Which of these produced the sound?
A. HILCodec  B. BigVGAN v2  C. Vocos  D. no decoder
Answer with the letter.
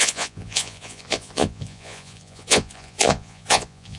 C